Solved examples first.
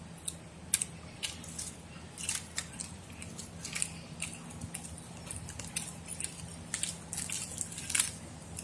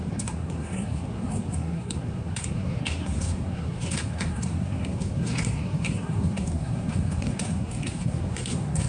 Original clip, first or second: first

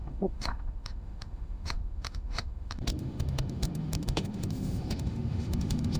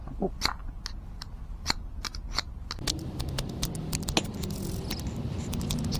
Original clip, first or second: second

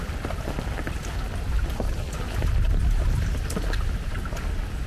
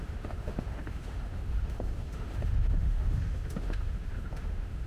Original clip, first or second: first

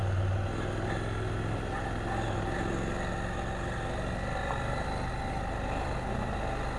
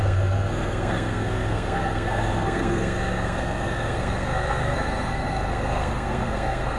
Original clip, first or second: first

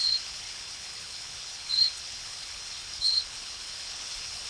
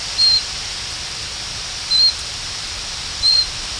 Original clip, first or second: second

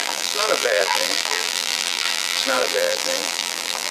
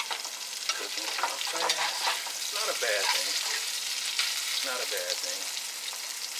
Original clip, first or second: second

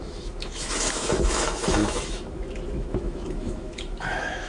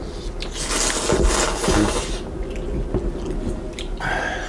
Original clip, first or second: second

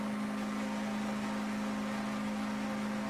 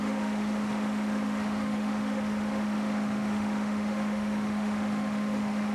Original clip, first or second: first